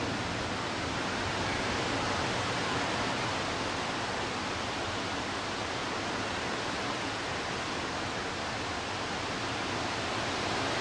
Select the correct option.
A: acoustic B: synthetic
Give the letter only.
A